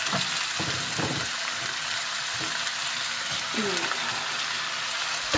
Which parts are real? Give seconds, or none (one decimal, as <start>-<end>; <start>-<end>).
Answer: 0.0-5.4